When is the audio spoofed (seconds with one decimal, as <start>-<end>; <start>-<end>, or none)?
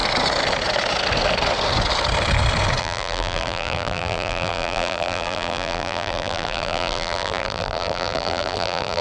2.8-9.0